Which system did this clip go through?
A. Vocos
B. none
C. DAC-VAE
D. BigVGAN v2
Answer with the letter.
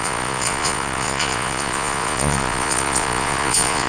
A